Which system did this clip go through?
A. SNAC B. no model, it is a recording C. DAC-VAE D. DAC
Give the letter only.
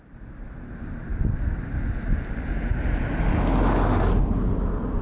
B